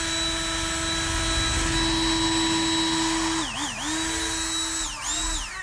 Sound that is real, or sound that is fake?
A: real